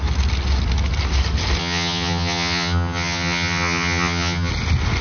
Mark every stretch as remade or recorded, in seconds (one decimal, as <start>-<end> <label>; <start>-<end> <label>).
0.0-1.6 recorded; 1.6-4.5 remade; 4.5-5.0 recorded